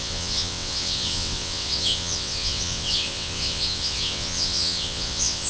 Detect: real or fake fake